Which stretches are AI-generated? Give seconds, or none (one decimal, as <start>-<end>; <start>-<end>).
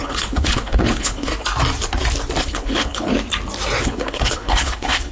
0.0-1.3; 2.4-3.1; 3.8-5.1